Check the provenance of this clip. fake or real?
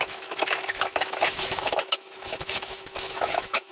fake